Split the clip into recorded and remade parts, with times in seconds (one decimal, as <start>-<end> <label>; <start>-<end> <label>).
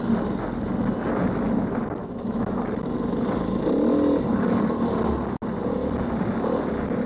0.0-2.0 recorded; 2.0-2.6 remade; 2.6-7.1 recorded